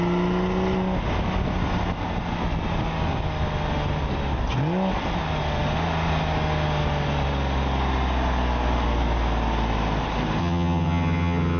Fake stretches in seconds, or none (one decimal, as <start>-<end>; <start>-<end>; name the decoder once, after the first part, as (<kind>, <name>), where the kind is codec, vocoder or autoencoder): 10.4-11.6 (vocoder, HiFi-GAN)